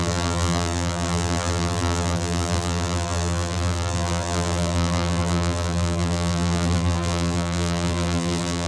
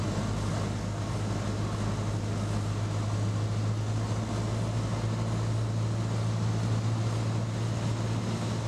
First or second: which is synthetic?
first